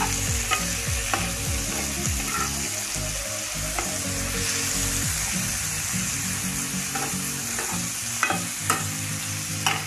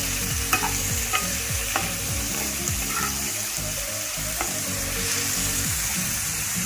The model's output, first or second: second